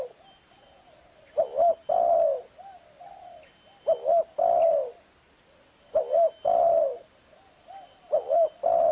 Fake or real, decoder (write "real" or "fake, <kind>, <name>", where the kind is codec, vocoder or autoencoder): real